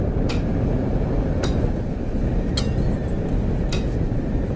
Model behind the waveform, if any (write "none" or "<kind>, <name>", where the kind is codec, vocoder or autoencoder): none